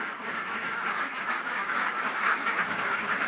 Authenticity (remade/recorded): remade